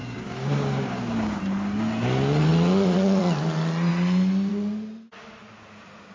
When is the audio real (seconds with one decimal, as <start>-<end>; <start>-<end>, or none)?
1.4-6.1